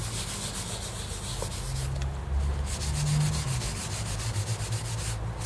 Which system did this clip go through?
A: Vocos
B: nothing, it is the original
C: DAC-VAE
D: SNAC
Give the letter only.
B